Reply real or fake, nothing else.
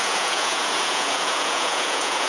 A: fake